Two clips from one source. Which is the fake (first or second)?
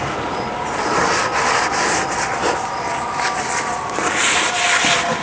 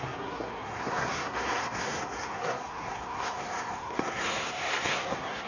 second